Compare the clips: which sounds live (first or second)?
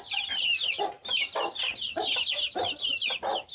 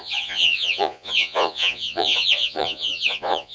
first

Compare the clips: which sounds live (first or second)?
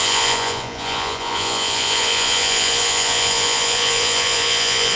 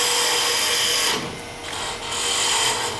second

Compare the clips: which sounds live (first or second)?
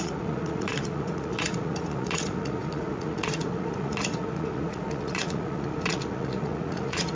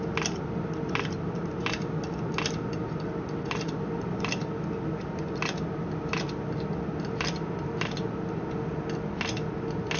second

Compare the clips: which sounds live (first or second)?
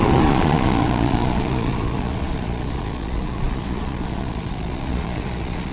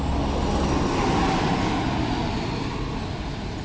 second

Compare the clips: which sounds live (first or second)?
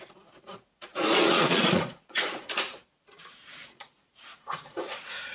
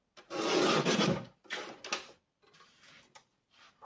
second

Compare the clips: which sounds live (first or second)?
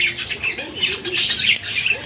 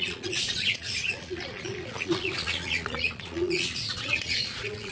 first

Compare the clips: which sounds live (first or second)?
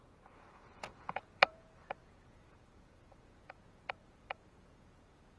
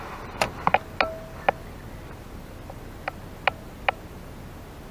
second